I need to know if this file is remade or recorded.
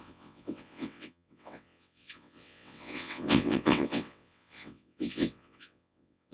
remade